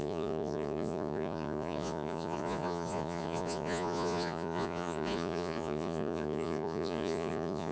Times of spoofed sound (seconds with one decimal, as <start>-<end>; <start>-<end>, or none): 0.0-7.7